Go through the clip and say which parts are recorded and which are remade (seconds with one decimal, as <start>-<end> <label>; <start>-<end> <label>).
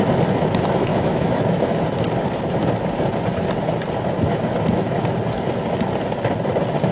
0.0-0.9 recorded; 0.9-1.7 remade; 1.7-6.9 recorded